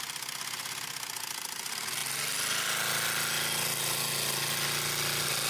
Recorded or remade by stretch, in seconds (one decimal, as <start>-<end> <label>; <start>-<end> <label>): 0.0-5.5 recorded